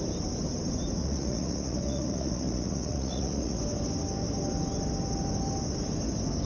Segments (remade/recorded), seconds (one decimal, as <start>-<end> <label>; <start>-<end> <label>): 0.0-1.0 recorded; 1.0-3.6 remade; 3.6-6.5 recorded